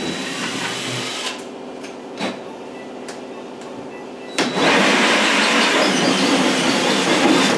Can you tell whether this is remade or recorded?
recorded